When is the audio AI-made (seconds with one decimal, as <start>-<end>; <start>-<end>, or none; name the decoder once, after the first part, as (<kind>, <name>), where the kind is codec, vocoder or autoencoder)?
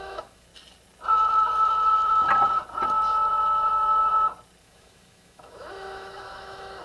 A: 0.0-0.5 (autoencoder, DAC-VAE); 4.6-6.8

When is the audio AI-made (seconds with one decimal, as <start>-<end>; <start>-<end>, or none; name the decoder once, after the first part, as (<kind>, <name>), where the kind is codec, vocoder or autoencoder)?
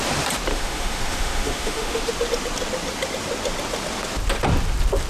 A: 0.5-2.1 (autoencoder, DAC-VAE)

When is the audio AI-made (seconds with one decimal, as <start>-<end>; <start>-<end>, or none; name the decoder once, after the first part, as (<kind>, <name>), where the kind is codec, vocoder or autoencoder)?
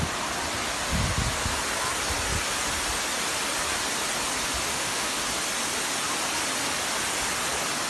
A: 4.7-5.2 (autoencoder, DAC-VAE)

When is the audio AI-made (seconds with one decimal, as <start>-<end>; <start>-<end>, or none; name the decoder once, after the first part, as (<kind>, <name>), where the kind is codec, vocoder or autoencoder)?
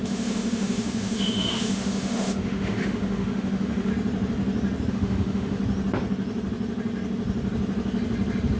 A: 0.0-3.9 (autoencoder, DAC-VAE); 4.9-5.6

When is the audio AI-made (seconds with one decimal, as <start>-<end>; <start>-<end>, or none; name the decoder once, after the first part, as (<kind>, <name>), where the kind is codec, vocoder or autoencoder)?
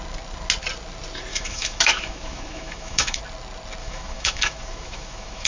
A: 1.3-3.2 (autoencoder, DAC-VAE); 3.8-5.5